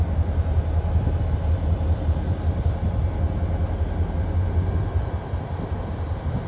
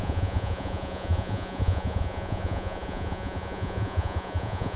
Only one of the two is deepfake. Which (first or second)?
second